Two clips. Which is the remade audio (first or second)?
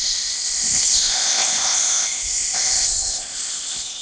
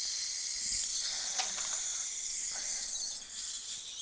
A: first